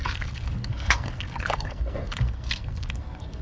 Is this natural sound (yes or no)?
no